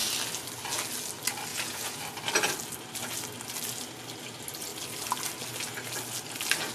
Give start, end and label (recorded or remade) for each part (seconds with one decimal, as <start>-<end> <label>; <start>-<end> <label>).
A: 0.0-1.5 recorded; 1.5-2.0 remade; 2.0-6.7 recorded